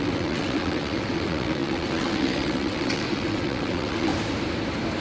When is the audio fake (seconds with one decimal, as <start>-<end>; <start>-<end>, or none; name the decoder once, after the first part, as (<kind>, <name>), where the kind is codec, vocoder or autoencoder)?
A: 0.0-4.1 (vocoder, WaveNeXt)